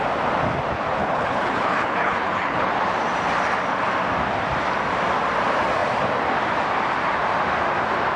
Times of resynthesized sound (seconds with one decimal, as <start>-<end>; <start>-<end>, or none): 1.0-2.7